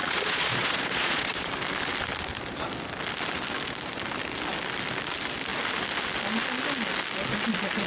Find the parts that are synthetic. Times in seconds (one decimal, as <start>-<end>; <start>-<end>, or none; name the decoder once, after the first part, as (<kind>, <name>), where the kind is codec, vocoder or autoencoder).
0.0-1.5 (vocoder, Vocos)